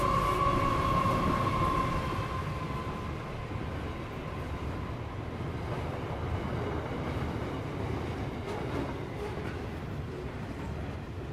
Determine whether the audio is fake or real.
real